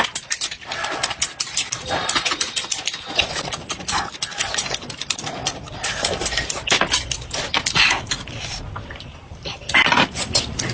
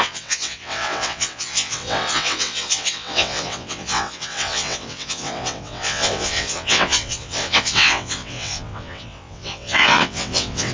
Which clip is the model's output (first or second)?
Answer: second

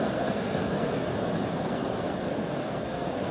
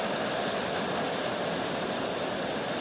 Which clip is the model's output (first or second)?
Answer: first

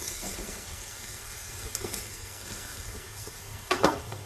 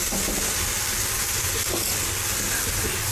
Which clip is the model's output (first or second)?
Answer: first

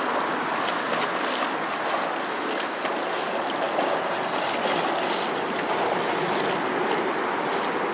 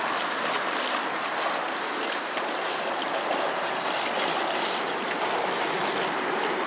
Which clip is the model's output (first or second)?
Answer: second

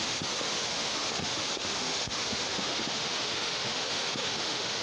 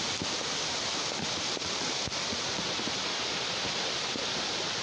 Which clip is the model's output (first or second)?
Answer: first